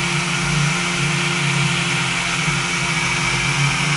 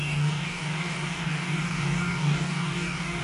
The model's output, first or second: second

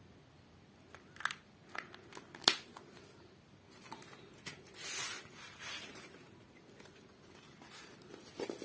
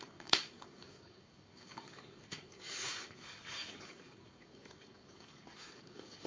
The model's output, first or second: second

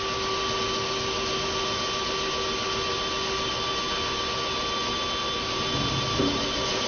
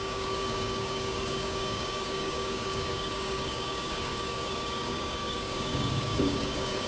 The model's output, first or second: second